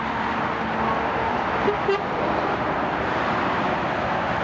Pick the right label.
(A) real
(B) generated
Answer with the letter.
A